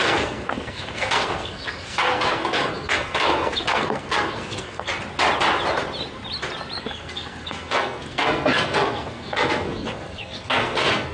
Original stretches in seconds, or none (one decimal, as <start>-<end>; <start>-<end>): 4.9-6.8